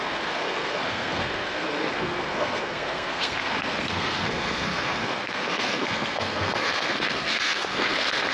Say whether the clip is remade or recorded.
remade